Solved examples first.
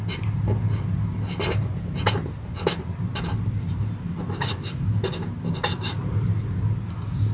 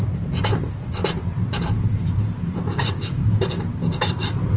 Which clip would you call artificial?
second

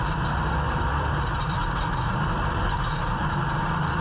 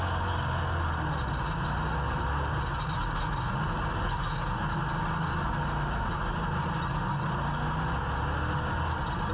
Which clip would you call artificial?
first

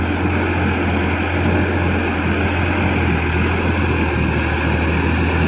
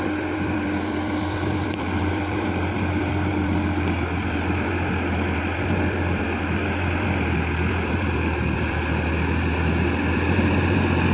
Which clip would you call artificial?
second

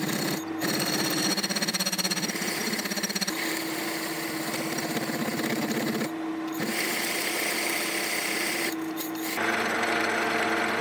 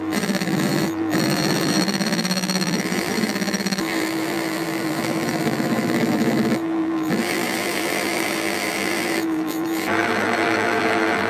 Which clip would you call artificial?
second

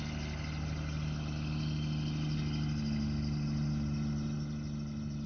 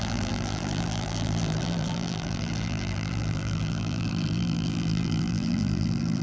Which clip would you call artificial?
second